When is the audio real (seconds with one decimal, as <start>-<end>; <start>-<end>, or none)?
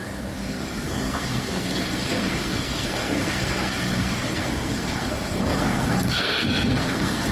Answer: none